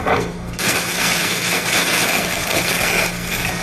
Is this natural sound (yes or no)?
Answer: no